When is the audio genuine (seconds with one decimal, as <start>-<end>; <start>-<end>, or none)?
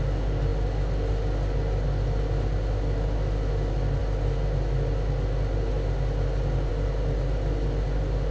0.0-8.3